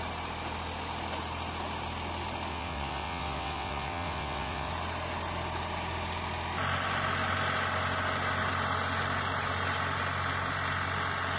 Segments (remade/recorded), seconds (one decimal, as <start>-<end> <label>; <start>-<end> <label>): 0.0-2.5 recorded; 2.5-4.7 remade; 4.7-11.4 recorded